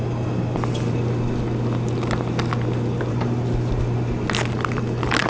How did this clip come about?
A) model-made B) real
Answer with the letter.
B